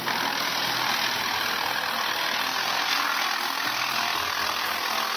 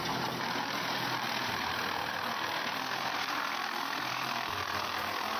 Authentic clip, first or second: first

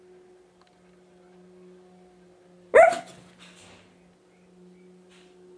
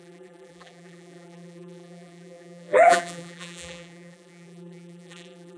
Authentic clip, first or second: first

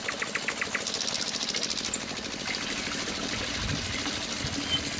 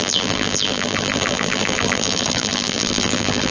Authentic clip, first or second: first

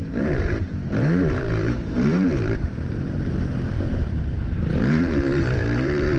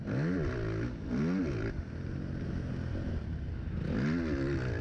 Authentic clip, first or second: second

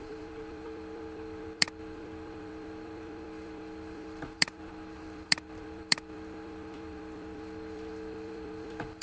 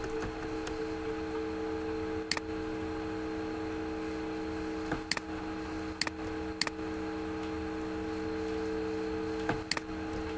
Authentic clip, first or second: second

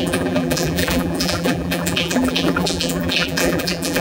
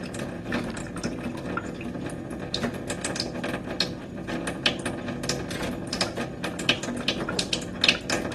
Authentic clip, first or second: second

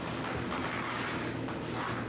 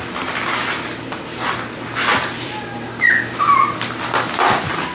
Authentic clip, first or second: first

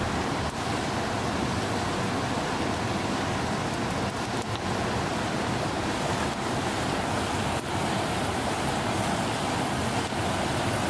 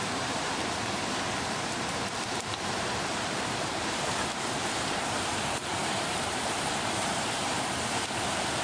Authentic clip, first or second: first